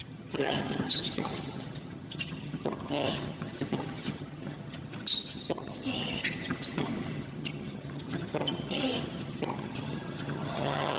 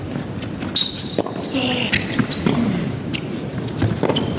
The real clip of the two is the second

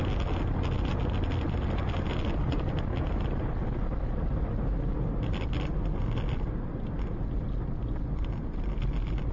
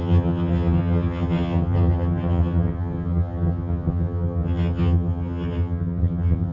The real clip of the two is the first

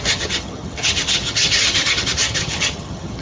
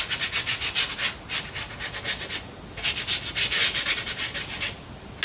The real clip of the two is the second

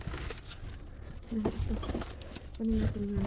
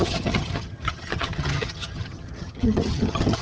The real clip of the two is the first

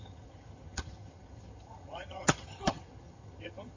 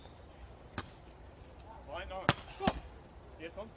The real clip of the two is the second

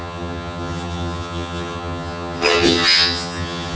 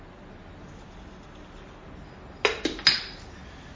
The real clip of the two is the second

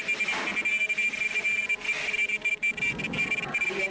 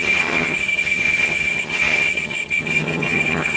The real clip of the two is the first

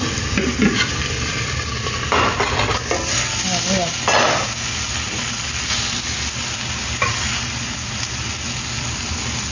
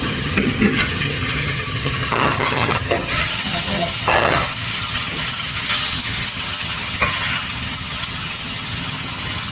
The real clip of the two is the first